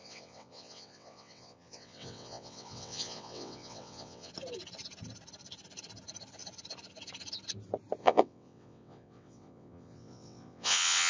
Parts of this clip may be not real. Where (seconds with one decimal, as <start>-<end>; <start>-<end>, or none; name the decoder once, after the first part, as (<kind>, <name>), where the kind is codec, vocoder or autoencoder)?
0.0-4.3 (vocoder, WaveNeXt); 8.0-11.1